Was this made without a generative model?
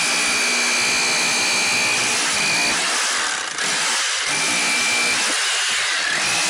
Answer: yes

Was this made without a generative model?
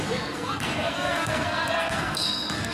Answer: no